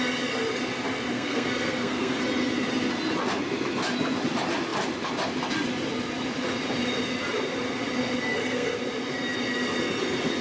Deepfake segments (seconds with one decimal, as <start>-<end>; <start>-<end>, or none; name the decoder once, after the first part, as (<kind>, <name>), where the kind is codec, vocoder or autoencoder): 1.1-2.2 (codec, SNAC); 8.3-8.8